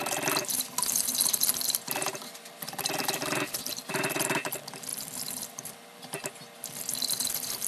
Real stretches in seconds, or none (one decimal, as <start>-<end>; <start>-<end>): 0.0-4.9; 6.0-7.7